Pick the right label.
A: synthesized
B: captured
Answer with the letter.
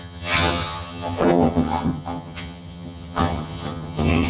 A